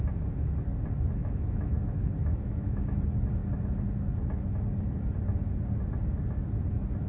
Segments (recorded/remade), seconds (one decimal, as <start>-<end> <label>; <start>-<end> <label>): 0.0-1.2 recorded; 1.2-2.8 remade; 2.8-7.1 recorded